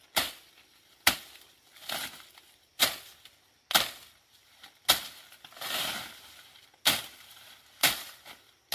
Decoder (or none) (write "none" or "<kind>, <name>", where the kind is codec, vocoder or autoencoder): none